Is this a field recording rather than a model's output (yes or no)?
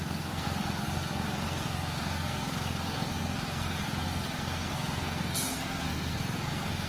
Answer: no